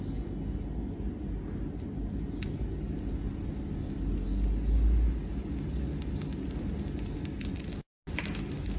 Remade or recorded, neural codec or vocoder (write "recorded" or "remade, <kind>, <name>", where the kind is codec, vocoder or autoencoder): recorded